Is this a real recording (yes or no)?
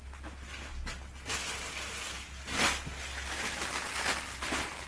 yes